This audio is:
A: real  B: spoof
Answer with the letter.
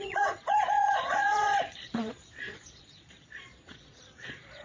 B